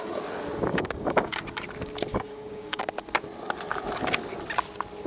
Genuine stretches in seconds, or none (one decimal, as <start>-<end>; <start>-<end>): 0.0-0.7; 1.4-2.1; 2.8-5.1